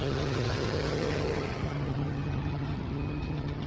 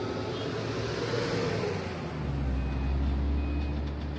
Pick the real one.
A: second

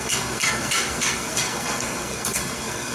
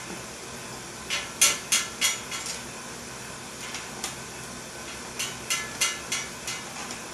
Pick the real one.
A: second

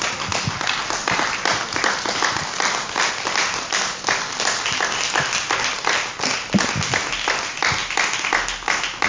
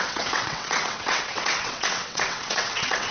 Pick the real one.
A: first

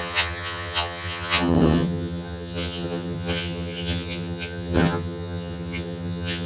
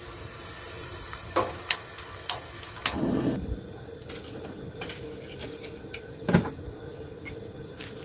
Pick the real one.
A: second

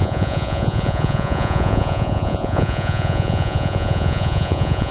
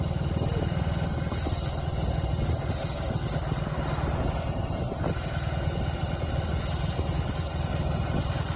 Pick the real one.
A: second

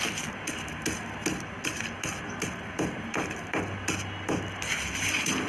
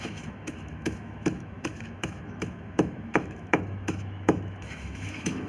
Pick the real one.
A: first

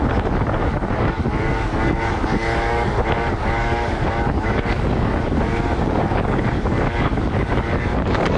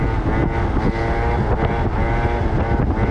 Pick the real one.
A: second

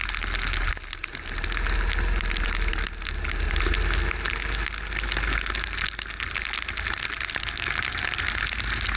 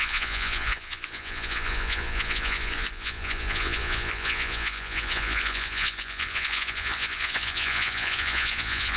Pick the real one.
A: first